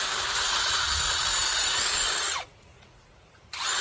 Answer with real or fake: fake